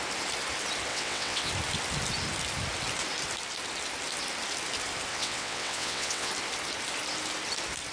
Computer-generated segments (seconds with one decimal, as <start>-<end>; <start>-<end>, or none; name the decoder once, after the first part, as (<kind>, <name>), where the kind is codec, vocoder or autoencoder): 0.9-1.5 (vocoder, WaveNeXt); 5.1-6.3